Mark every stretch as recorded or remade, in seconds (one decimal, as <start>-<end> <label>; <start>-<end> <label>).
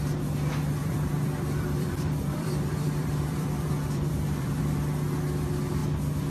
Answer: 0.0-0.8 recorded; 0.8-4.6 remade; 4.6-5.8 recorded; 5.8-6.3 remade